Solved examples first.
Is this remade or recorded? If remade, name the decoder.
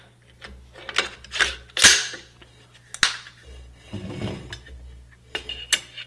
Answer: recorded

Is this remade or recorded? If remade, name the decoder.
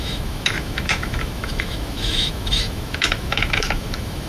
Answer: remade, autoencoder, DAC-VAE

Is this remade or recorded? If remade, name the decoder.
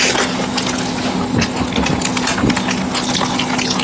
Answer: recorded